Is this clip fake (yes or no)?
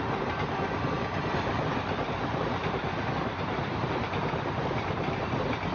no